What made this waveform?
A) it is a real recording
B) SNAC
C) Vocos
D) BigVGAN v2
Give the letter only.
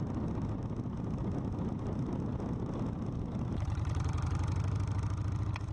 A